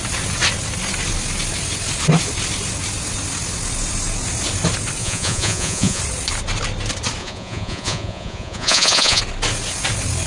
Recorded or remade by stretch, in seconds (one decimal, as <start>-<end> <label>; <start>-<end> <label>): 0.0-5.0 recorded; 5.0-6.0 remade; 6.0-7.2 recorded; 7.2-9.2 remade; 9.2-10.3 recorded